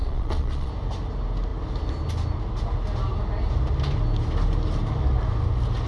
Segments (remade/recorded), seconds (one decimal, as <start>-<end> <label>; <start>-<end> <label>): 0.0-0.7 remade; 0.7-5.9 recorded